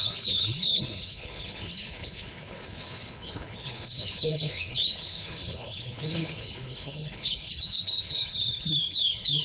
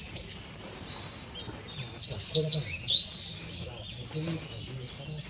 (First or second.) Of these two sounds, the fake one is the first